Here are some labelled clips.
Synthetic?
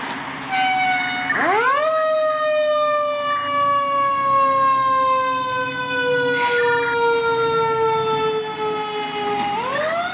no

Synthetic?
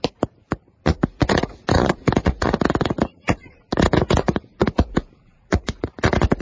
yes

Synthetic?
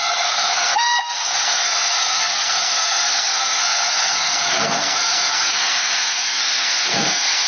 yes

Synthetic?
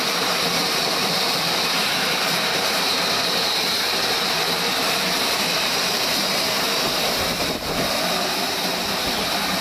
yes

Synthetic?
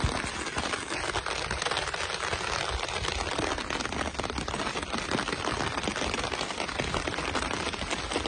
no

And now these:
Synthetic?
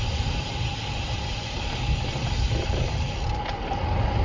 no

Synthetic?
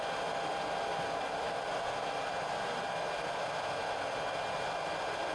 no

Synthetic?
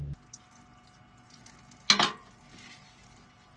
no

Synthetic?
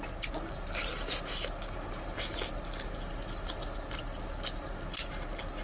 no